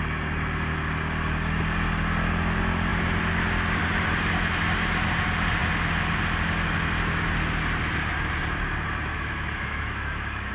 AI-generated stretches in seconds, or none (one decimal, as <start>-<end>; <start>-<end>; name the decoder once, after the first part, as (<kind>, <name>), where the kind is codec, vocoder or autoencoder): 9.1-10.5 (autoencoder, DAC-VAE)